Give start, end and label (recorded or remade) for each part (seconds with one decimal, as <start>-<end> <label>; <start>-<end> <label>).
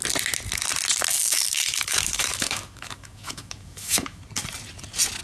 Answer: 0.0-1.1 recorded; 1.1-4.2 remade; 4.2-5.2 recorded